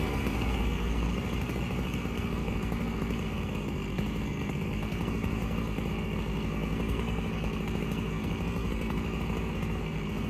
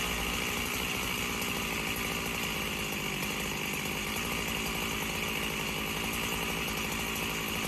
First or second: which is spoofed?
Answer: first